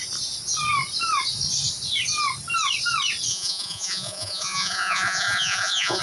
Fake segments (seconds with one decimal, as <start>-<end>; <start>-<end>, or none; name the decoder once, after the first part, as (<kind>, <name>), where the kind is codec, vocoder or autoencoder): 3.3-6.0 (vocoder, Vocos)